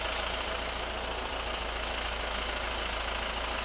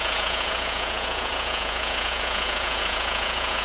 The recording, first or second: first